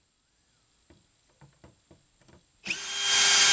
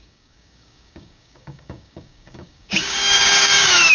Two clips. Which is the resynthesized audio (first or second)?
second